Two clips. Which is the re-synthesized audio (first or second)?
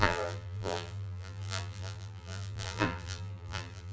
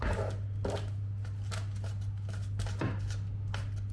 first